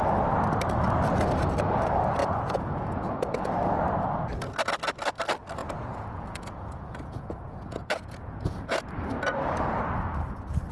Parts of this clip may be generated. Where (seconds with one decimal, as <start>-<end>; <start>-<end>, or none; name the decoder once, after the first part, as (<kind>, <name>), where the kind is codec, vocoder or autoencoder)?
2.2-3.5 (vocoder, Vocos); 5.6-8.8